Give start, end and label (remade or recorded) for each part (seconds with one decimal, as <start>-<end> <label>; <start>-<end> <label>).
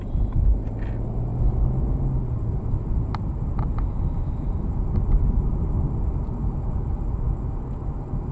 0.0-8.3 recorded